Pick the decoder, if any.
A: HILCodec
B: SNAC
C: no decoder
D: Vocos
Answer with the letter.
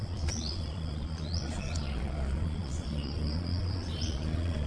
D